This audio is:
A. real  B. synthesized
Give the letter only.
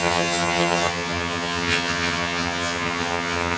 B